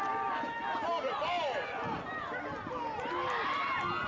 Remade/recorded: recorded